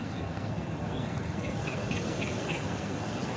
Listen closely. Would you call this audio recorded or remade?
remade